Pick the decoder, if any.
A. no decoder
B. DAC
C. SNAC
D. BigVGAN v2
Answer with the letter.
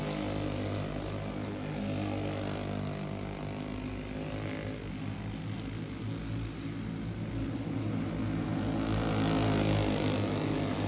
A